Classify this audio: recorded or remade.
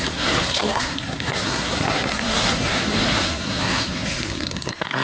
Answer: remade